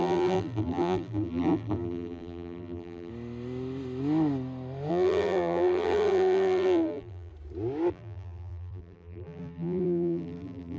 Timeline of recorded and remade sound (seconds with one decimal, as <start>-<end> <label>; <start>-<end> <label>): 0.0-3.1 remade; 3.1-4.9 recorded; 4.9-7.3 remade; 7.3-7.9 recorded; 7.9-10.8 remade